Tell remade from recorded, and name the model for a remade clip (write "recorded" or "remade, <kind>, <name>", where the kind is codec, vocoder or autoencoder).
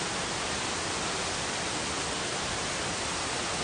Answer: recorded